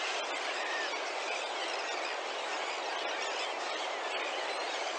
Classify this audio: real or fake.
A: real